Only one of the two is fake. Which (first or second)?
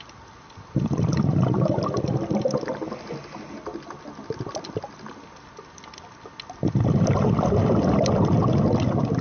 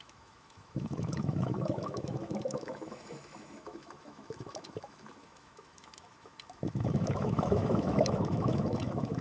second